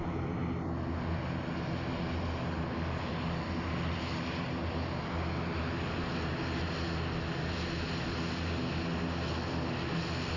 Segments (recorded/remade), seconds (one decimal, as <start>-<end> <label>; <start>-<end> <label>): 0.0-10.4 recorded